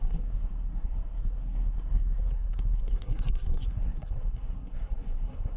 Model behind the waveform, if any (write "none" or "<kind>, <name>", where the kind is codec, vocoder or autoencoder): codec, SNAC